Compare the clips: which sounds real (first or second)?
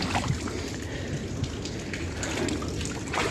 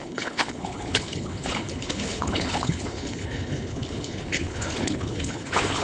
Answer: first